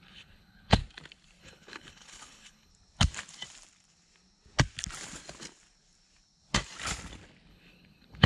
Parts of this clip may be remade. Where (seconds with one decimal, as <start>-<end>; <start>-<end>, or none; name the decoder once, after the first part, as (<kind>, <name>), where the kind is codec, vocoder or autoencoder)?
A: 0.0-0.8 (codec, HILCodec); 1.4-2.7; 7.5-8.3